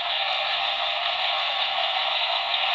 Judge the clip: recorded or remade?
remade